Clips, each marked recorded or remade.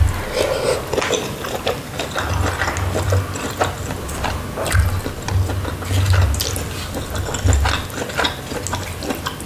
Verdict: recorded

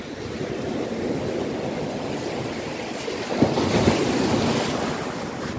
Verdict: recorded